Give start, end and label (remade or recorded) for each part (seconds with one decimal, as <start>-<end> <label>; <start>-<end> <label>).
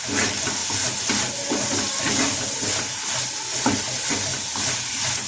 0.0-5.3 recorded